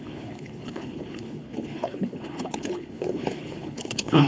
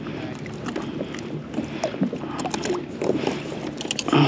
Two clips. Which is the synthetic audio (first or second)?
first